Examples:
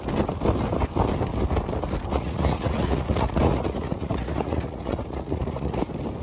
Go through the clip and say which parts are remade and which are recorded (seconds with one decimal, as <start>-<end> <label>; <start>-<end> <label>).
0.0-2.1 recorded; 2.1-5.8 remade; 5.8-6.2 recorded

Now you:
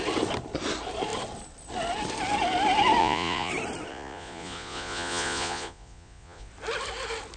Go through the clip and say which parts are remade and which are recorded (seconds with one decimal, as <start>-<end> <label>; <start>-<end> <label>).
0.0-3.0 recorded; 3.0-3.5 remade; 3.5-3.9 recorded; 3.9-6.5 remade; 6.5-7.4 recorded

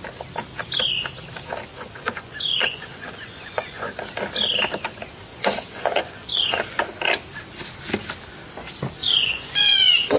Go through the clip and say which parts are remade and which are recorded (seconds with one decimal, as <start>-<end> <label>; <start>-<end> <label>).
0.0-1.7 recorded; 1.7-4.0 remade; 4.0-5.3 recorded; 5.3-6.8 remade; 6.8-9.0 recorded; 9.0-10.2 remade